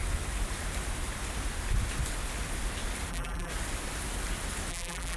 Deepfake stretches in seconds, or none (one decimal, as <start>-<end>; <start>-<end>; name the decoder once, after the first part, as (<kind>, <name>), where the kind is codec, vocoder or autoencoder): 3.1-3.5 (vocoder, BigVGAN v2); 4.7-5.2

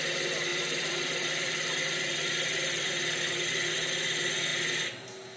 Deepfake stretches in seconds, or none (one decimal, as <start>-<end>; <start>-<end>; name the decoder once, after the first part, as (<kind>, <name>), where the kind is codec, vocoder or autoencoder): 0.5-2.9 (vocoder, BigVGAN v2)

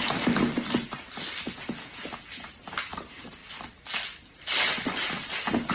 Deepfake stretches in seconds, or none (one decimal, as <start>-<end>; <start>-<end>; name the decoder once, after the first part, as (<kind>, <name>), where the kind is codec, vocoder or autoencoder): none

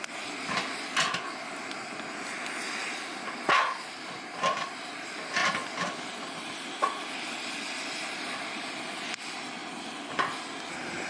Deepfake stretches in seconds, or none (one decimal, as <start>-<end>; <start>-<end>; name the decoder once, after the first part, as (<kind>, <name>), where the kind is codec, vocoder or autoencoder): none

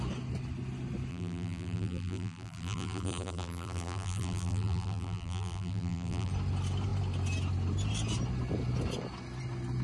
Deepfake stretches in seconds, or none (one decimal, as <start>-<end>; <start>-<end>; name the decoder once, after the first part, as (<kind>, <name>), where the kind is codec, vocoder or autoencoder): 1.1-6.3 (vocoder, BigVGAN v2)